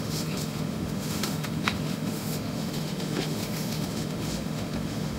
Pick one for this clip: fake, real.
fake